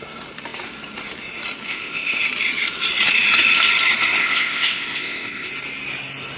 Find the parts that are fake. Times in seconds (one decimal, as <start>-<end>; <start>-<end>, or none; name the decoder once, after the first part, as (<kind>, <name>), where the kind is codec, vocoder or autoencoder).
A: 1.7-2.2 (codec, ZipCodec); 4.2-5.5